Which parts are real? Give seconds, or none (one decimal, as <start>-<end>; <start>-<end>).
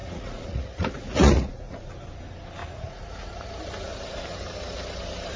1.9-2.6; 3.5-5.4